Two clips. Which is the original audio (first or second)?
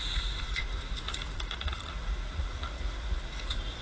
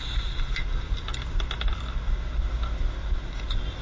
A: second